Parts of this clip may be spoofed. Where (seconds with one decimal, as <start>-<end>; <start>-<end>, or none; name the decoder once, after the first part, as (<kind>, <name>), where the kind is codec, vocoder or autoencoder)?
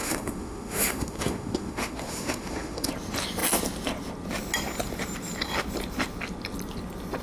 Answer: 0.0-2.9 (autoencoder, DAC-VAE)